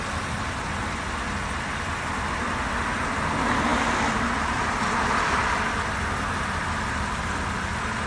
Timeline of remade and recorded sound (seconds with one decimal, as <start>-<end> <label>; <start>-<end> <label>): 0.0-8.1 recorded